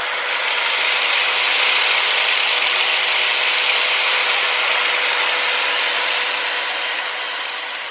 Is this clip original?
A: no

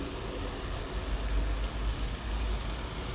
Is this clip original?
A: yes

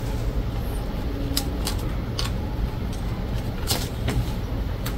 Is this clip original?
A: yes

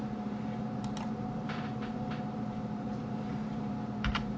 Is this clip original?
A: no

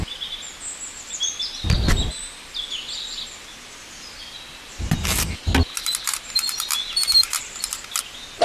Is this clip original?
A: yes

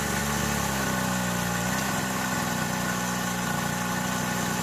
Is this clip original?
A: yes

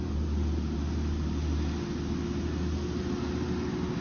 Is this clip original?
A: yes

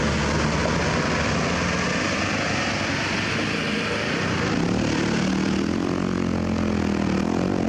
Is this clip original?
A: yes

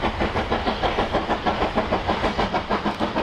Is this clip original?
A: yes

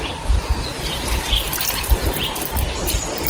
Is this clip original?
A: yes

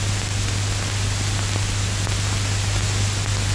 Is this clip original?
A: yes